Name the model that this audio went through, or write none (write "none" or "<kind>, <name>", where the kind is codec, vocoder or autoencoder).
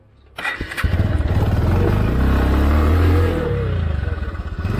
none